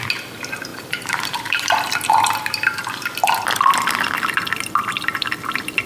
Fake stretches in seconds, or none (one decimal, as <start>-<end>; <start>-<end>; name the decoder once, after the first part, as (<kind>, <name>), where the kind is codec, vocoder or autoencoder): 0.7-2.9 (vocoder, BigVGAN v2)

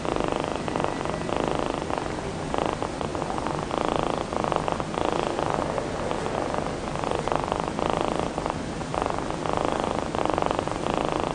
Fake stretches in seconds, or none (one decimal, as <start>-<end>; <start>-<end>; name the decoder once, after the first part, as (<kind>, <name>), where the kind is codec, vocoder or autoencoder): 0.0-0.5 (vocoder, BigVGAN v2); 2.3-3.1; 6.7-11.3